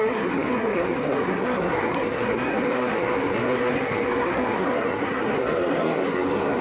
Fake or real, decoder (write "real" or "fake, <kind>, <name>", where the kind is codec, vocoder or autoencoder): fake, codec, SNAC